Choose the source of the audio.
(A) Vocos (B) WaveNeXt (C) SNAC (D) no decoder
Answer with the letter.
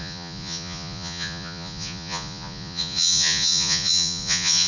A